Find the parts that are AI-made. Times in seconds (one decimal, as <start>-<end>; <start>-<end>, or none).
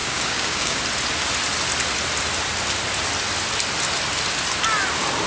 0.0-0.8